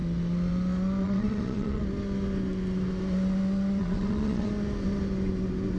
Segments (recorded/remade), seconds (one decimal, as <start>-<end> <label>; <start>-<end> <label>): 0.0-1.0 recorded; 1.0-1.8 remade; 1.8-3.8 recorded; 3.8-4.5 remade; 4.5-5.8 recorded